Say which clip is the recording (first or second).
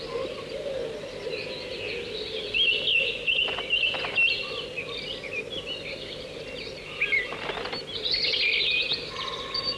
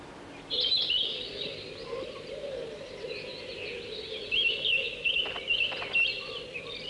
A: first